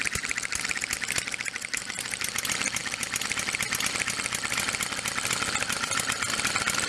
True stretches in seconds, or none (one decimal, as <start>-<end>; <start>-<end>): 0.0-6.9